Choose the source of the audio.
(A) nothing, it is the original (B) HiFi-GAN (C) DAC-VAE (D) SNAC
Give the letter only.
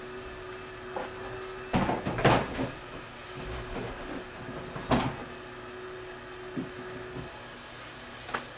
A